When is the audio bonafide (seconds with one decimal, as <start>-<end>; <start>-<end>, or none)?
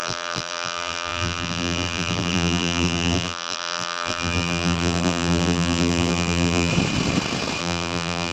6.7-7.6